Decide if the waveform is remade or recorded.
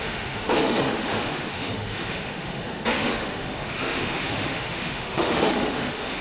remade